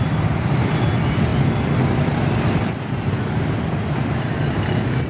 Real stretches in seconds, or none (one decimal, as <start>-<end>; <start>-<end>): 0.0-5.1